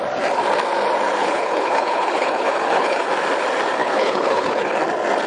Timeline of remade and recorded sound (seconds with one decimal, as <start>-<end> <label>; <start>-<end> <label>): 0.0-1.2 recorded; 1.2-3.1 remade; 3.1-3.8 recorded; 3.8-4.8 remade; 4.8-5.3 recorded